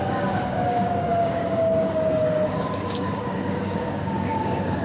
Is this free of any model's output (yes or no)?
no